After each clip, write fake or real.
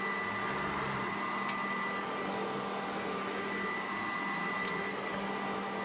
real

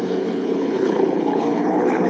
fake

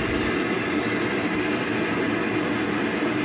real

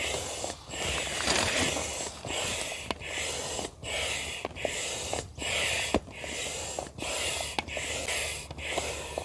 real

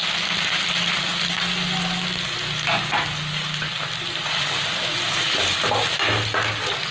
real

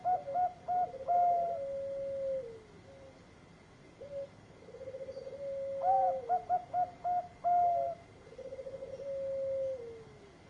real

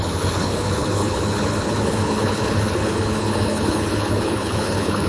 fake